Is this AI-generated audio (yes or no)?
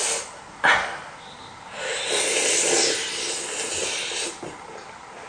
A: no